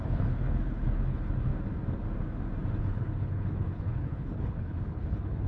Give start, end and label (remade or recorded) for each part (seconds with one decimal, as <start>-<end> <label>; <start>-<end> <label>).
0.0-1.5 remade; 1.5-2.8 recorded; 2.8-5.5 remade